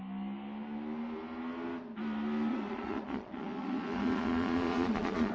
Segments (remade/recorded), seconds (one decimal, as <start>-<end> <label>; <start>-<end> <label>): 0.0-2.5 recorded; 2.5-5.3 remade